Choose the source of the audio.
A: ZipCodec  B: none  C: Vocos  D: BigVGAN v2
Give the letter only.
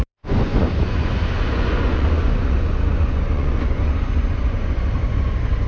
C